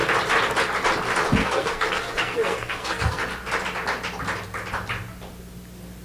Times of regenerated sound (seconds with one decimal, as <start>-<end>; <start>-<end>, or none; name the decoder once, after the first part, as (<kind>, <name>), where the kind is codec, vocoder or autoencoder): 1.4-3.2 (codec, SNAC)